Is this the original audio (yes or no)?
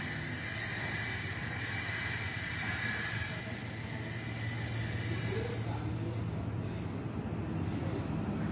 yes